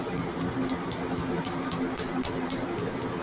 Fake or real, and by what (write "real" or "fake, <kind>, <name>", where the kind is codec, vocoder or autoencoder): real